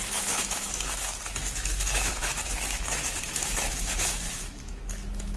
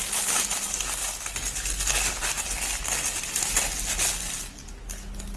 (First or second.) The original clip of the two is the second